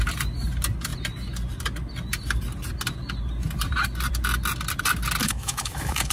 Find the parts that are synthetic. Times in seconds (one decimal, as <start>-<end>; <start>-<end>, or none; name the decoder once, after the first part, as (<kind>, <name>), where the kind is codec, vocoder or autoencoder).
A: 5.2-6.1 (autoencoder, DAC-VAE)